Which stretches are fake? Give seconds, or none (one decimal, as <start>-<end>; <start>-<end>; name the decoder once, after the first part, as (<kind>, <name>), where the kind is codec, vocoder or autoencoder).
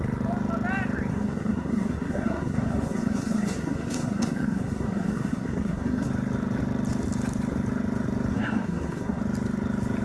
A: 1.1-6.1 (codec, SNAC); 8.3-9.2